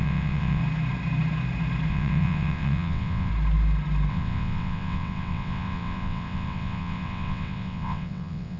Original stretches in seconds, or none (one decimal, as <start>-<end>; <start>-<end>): 0.6-1.9; 3.3-4.1

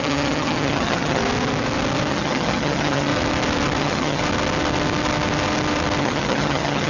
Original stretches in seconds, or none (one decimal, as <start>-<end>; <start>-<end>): 1.2-2.1; 3.1-3.8; 4.2-6.0

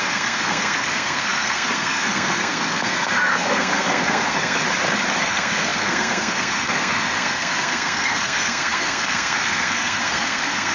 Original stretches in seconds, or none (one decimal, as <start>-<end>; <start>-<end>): 4.6-5.2

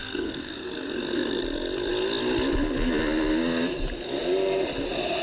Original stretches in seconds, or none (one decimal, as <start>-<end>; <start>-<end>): 1.4-5.2

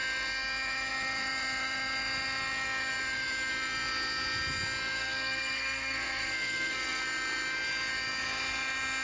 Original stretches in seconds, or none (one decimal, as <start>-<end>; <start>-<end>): 0.0-5.0; 7.0-9.0

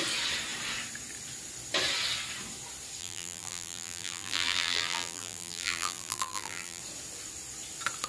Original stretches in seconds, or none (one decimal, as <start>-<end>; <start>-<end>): 0.0-3.0; 6.8-8.1

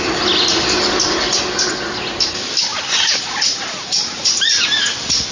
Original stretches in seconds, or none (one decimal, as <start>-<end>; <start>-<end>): 0.0-2.7; 4.8-5.3

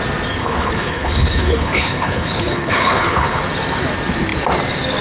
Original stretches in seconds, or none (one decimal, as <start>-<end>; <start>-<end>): 0.0-0.4; 3.4-5.0